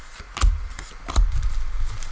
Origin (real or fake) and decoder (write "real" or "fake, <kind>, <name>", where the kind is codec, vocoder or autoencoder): real